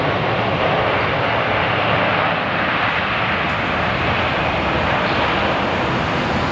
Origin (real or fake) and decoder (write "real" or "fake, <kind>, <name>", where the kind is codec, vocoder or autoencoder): real